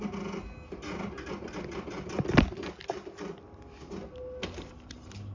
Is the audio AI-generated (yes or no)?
no